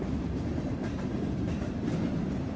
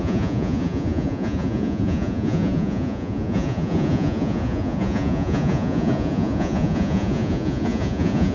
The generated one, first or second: second